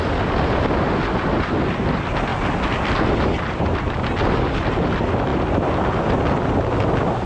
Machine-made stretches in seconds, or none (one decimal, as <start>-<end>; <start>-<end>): none